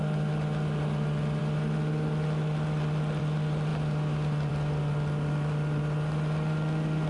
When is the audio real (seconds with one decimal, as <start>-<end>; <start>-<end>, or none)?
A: 0.0-7.1